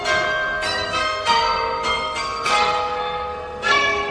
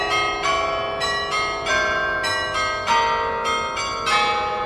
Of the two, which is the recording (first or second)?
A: second